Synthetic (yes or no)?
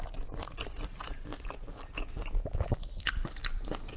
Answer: no